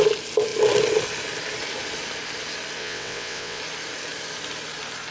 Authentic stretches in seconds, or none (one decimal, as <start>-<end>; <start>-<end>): 0.0-2.8; 3.6-5.1